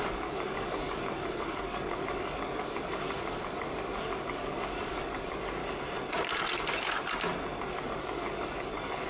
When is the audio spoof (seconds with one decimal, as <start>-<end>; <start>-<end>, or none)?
0.0-5.6; 7.8-9.1